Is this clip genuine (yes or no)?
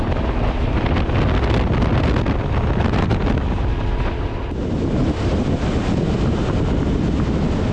yes